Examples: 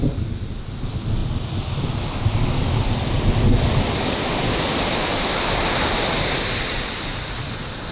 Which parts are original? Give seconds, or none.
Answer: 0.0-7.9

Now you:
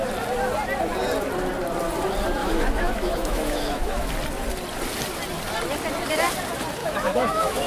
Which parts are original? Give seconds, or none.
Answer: 0.0-2.4; 4.1-6.8